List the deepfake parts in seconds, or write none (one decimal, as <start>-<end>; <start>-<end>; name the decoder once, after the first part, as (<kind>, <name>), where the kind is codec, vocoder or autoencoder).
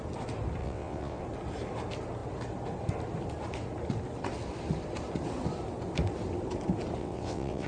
0.6-1.2 (vocoder, WaveNeXt); 7.0-7.7